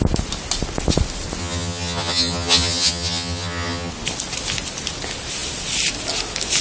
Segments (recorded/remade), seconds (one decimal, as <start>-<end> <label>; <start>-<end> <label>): 0.0-1.4 recorded; 1.4-3.9 remade; 3.9-6.6 recorded